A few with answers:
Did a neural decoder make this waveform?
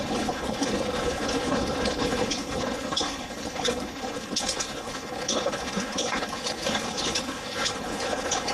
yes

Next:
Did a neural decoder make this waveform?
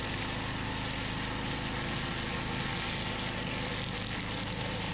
no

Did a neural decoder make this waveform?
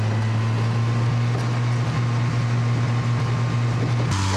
no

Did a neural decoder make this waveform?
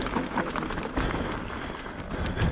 no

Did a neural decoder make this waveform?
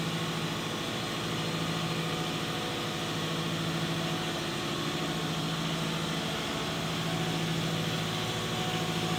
no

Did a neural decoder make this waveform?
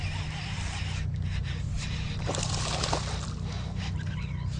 no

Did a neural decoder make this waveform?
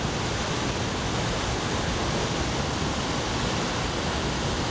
no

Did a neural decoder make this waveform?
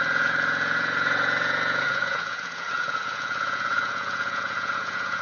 yes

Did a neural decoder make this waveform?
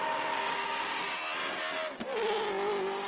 no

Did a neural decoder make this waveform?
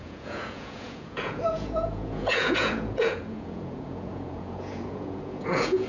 yes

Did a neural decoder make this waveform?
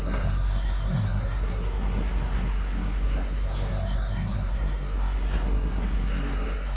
yes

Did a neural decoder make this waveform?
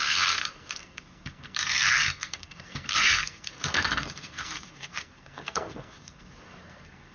yes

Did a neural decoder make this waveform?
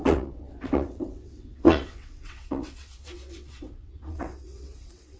yes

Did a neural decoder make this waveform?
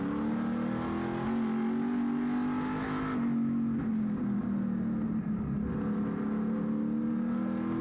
no